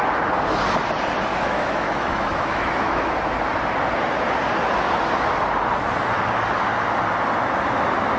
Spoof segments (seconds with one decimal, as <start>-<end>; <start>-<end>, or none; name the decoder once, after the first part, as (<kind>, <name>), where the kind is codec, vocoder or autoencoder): 1.3-3.1 (autoencoder, DAC-VAE)